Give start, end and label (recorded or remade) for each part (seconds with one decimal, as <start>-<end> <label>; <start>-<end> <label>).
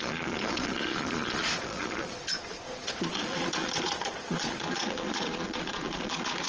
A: 0.0-6.5 remade